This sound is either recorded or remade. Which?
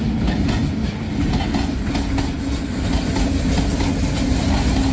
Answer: recorded